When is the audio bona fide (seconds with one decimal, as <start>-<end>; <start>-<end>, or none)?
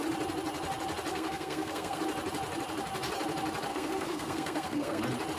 0.0-1.1; 2.0-3.7; 5.0-5.4